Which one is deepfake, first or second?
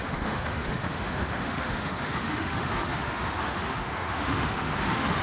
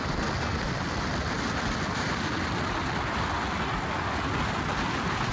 first